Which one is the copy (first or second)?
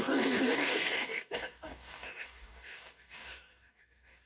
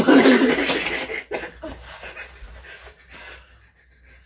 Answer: first